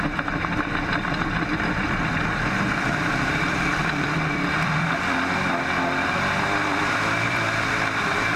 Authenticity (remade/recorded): remade